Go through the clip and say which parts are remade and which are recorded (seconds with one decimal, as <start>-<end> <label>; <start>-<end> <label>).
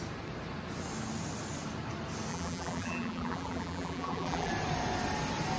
0.0-2.3 recorded; 2.3-4.5 remade; 4.5-5.6 recorded